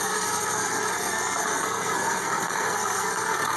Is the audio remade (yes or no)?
yes